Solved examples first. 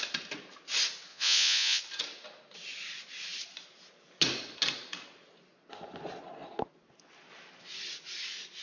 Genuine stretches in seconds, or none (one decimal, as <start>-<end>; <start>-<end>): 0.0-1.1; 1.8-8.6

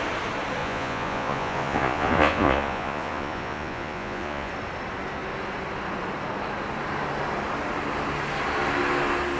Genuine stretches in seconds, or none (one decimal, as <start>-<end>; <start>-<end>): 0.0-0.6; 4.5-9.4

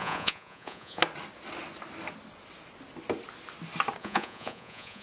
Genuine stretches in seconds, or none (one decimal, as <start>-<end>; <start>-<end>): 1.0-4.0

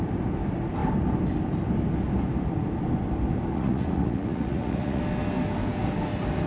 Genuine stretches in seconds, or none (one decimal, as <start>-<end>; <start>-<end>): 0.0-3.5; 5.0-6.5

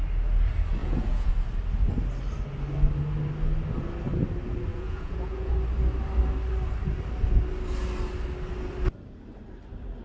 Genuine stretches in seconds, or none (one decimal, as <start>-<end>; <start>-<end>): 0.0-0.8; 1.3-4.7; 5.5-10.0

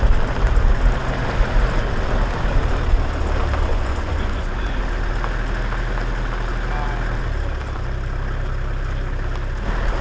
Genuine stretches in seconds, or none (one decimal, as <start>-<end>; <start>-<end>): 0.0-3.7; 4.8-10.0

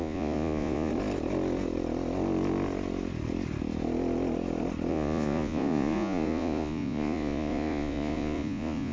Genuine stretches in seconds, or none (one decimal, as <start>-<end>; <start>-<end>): 0.9-4.9